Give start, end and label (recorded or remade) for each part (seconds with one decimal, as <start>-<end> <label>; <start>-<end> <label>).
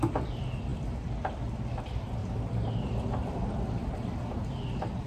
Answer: 0.0-2.2 recorded; 2.2-3.1 remade; 3.1-5.1 recorded